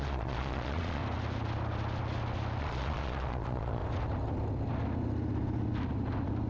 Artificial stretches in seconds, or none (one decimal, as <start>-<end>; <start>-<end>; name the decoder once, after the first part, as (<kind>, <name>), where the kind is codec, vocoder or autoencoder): 0.0-1.0 (vocoder, Vocos); 2.6-3.8